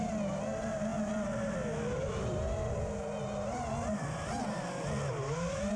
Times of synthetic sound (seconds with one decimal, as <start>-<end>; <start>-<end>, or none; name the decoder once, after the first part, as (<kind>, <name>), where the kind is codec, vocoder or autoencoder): none